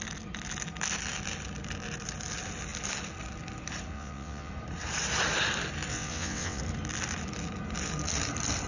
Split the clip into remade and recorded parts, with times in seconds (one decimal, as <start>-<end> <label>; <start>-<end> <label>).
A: 0.0-3.9 recorded; 3.9-4.5 remade; 4.5-5.9 recorded; 5.9-6.6 remade; 6.6-8.7 recorded